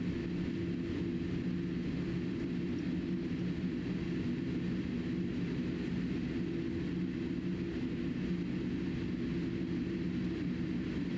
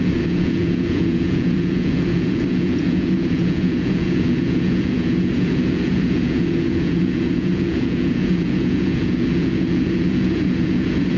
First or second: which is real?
first